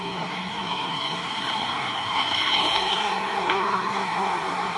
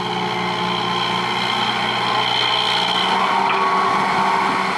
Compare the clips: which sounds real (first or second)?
second